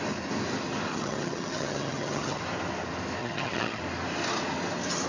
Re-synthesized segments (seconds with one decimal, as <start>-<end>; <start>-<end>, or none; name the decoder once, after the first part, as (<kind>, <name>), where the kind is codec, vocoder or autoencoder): 0.9-2.4 (vocoder, HiFi-GAN); 3.2-3.8